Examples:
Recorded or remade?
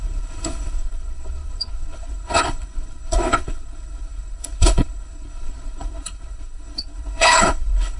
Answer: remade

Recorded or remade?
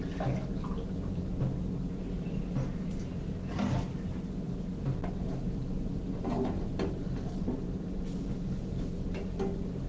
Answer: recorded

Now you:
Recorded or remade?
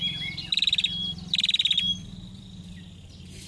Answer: remade